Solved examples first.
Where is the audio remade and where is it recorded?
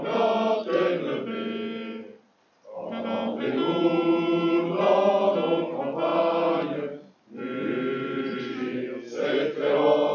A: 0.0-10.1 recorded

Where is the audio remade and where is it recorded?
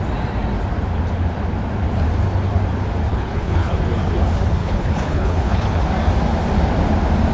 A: 0.0-3.1 recorded; 3.1-3.7 remade; 3.7-4.6 recorded; 4.6-5.8 remade; 5.8-7.3 recorded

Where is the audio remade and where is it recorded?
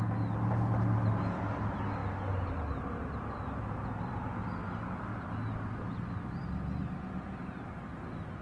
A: 0.0-8.4 recorded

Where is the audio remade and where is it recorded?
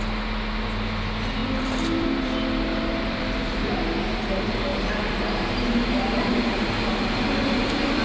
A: 0.0-1.4 recorded; 1.4-4.0 remade; 4.0-4.7 recorded; 4.7-6.5 remade; 6.5-8.0 recorded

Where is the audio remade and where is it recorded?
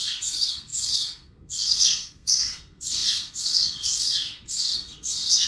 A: 0.0-5.5 remade